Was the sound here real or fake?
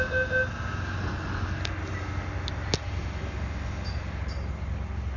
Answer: real